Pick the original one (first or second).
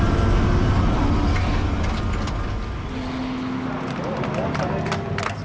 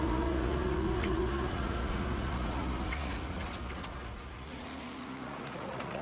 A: first